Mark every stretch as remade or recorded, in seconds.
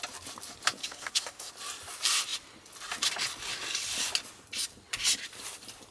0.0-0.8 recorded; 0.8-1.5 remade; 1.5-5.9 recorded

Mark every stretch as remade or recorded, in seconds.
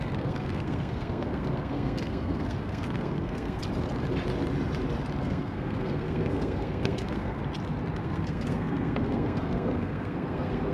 0.0-3.6 remade; 3.6-5.2 recorded; 5.2-7.4 remade; 7.4-8.0 recorded; 8.0-10.7 remade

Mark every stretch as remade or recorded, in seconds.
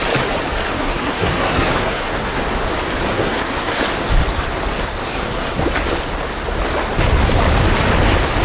0.0-0.8 recorded; 0.8-2.4 remade; 2.4-3.1 recorded; 3.1-3.8 remade; 3.8-5.0 recorded; 5.0-5.6 remade; 5.6-8.4 recorded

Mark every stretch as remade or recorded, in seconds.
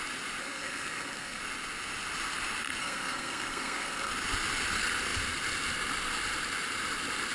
0.0-0.4 recorded; 0.4-1.4 remade; 1.4-2.8 recorded; 2.8-4.1 remade; 4.1-7.3 recorded